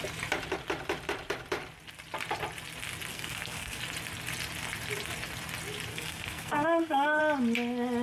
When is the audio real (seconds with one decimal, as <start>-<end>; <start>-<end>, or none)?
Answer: 0.0-3.1; 3.8-5.9; 7.2-8.0